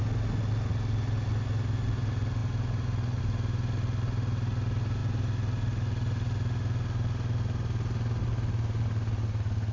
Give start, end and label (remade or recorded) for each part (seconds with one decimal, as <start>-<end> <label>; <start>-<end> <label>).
0.0-9.7 recorded